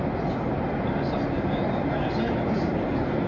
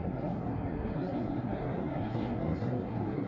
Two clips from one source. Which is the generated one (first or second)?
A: second